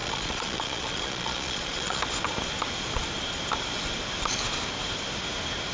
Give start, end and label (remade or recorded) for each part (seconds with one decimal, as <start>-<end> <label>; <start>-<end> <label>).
0.0-2.0 remade; 2.0-5.7 recorded